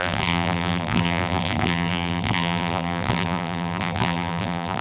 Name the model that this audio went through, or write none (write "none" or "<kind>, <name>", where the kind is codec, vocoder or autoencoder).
vocoder, BigVGAN v2